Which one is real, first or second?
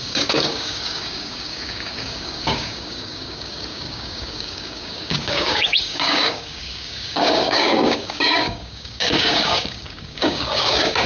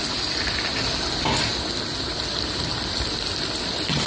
second